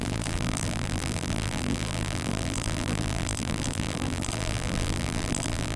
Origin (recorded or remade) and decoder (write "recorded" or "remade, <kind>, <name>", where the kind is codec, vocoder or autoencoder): remade, vocoder, BigVGAN v2